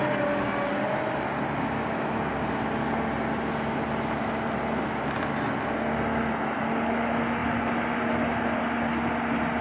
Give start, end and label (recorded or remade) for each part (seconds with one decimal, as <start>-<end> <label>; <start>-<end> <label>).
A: 0.0-9.6 recorded